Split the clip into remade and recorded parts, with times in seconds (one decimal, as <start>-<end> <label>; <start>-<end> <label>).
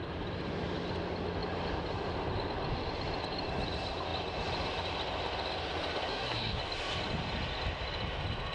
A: 0.0-6.1 recorded; 6.1-6.6 remade; 6.6-8.5 recorded